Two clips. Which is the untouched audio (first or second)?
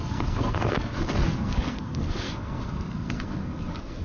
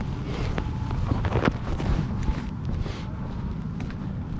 second